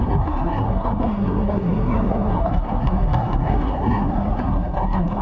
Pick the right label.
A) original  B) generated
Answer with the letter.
B